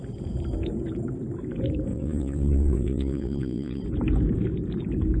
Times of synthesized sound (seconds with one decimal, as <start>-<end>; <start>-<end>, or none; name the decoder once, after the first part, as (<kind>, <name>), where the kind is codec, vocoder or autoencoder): 1.9-3.8 (vocoder, WaveNeXt)